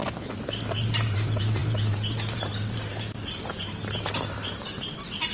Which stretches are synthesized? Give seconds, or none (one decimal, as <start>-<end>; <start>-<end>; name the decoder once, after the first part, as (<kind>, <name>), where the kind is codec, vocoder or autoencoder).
0.0-5.3 (vocoder, BigVGAN v2)